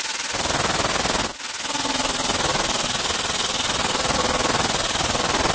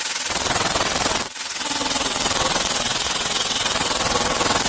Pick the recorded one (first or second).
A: first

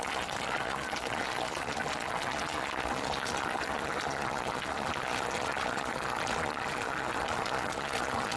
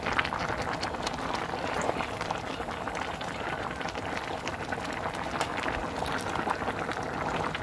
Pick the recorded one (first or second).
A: second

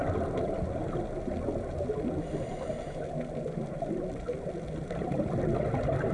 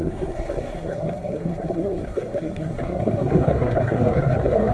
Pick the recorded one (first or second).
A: first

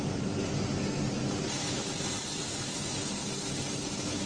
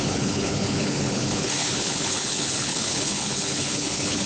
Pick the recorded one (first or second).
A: first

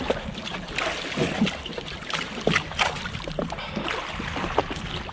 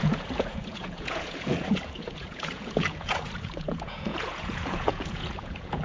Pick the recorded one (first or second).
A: first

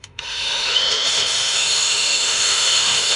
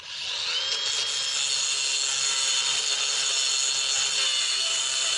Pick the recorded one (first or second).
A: second